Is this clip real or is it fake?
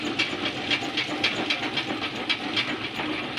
real